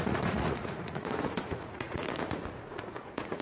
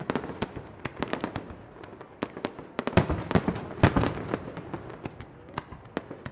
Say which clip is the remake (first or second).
first